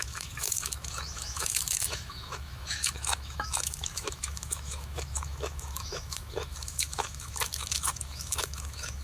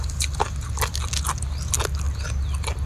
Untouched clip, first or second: second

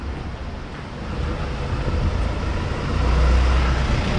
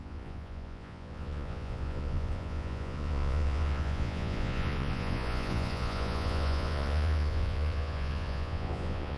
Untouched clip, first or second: first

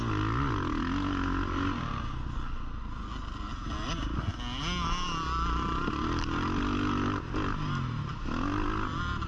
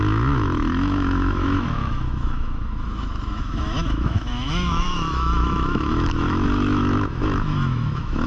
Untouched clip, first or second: first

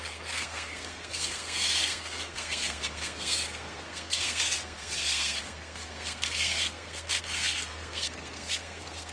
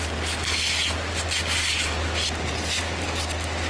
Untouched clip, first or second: second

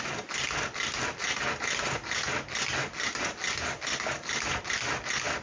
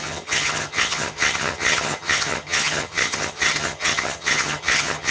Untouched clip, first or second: first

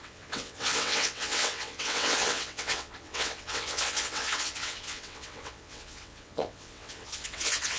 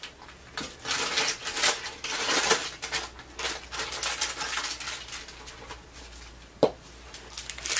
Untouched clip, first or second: second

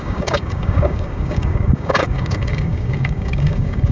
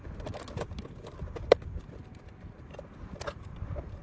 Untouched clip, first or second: second